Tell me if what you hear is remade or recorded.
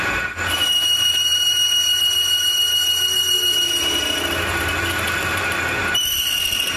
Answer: recorded